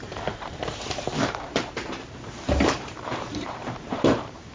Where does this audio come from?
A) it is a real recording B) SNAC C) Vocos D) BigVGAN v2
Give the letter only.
D